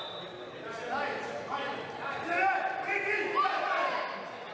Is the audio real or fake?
real